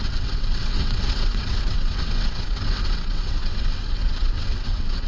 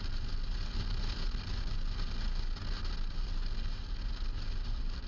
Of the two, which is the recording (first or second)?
second